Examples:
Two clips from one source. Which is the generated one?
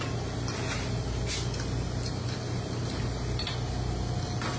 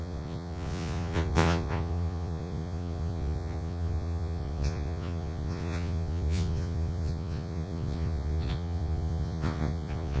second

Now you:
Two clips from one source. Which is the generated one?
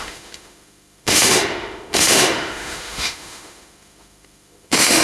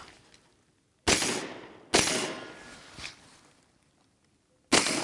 first